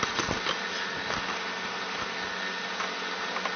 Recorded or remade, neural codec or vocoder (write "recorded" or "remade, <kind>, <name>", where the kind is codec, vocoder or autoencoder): recorded